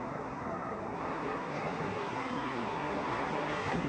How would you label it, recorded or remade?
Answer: remade